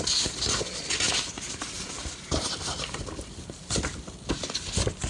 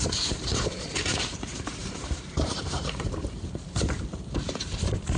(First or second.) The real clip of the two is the first